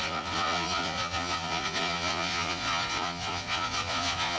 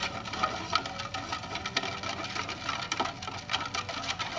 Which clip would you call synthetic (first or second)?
first